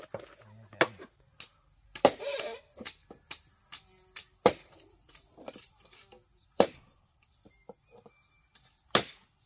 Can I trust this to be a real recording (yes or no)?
yes